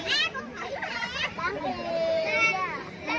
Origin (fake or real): fake